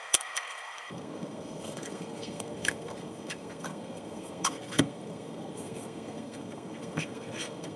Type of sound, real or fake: fake